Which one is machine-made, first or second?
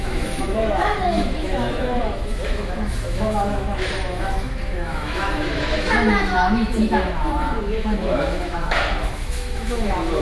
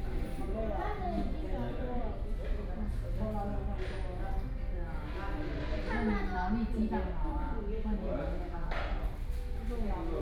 first